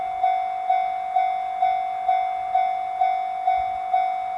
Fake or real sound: real